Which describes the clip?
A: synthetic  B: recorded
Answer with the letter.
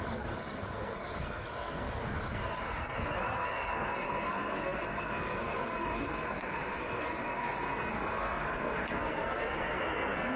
A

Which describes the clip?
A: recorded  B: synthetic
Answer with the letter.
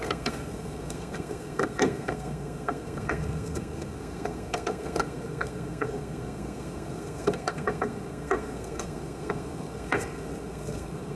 B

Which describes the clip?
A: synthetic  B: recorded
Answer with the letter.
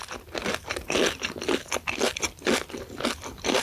B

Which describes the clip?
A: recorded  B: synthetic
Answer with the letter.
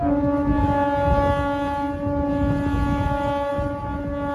A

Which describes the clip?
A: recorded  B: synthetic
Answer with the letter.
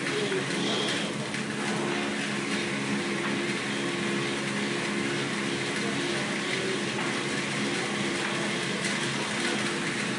A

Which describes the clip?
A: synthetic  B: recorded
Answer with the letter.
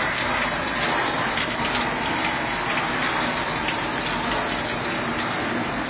B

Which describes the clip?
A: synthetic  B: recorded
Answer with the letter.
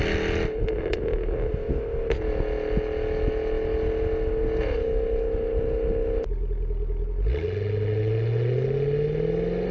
B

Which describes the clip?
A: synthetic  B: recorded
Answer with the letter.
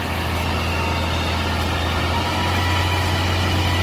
B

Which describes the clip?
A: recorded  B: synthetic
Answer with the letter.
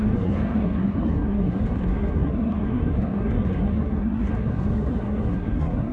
B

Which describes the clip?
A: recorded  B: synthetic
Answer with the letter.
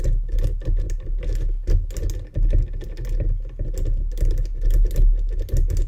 A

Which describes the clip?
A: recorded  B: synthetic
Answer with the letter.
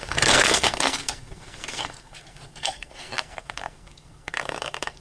B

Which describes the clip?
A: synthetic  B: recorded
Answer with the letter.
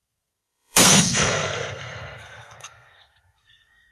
A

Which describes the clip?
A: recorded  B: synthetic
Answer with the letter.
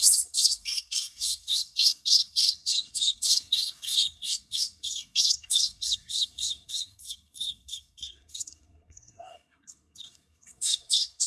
B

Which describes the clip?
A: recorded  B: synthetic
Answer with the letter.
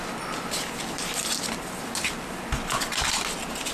A